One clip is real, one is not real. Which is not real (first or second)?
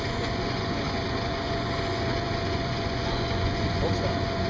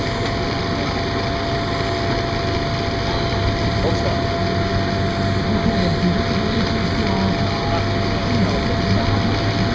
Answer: first